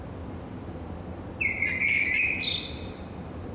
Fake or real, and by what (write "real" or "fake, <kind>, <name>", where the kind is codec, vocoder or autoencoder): real